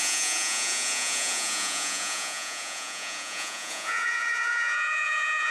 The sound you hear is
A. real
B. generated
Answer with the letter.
B